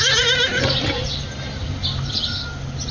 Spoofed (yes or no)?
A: no